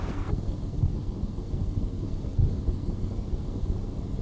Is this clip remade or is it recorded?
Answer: remade